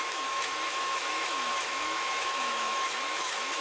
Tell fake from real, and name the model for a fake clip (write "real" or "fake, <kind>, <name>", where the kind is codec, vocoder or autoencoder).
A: fake, autoencoder, DAC-VAE